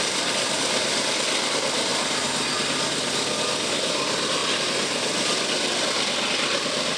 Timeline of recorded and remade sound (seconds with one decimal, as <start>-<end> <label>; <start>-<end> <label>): 0.0-1.9 remade; 1.9-3.4 recorded; 3.4-7.0 remade